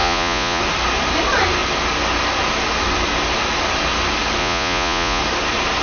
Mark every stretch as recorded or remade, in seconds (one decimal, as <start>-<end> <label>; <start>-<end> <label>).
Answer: 0.0-0.6 remade; 0.6-4.4 recorded; 4.4-5.2 remade; 5.2-5.8 recorded